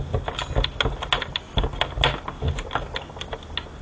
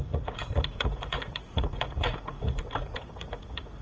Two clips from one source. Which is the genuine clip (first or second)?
first